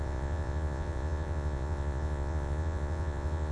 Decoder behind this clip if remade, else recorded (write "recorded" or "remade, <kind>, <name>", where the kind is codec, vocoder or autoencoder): remade, vocoder, Vocos